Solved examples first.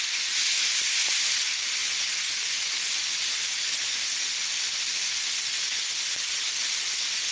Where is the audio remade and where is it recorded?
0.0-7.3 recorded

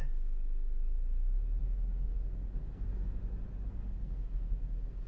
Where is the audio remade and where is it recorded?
0.0-1.6 recorded; 1.6-3.2 remade; 3.2-3.7 recorded; 3.7-5.1 remade

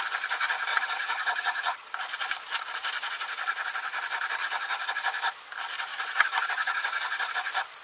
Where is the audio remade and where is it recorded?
0.0-0.7 recorded; 0.7-1.9 remade; 1.9-4.4 recorded; 4.4-4.9 remade; 4.9-5.9 recorded; 5.9-7.3 remade; 7.3-7.8 recorded

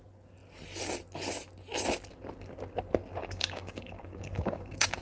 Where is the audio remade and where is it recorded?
0.0-3.2 recorded; 3.2-5.0 remade

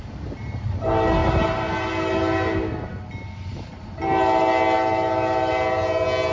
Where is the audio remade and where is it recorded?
0.0-6.3 recorded

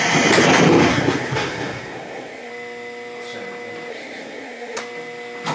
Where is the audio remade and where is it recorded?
0.0-0.9 recorded; 0.9-2.5 remade; 2.5-3.9 recorded; 3.9-4.8 remade; 4.8-5.5 recorded